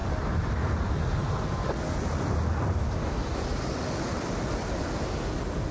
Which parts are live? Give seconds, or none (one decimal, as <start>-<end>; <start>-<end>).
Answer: 0.7-5.7